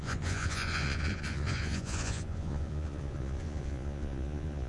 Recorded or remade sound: remade